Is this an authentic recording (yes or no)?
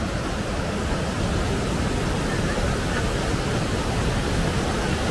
yes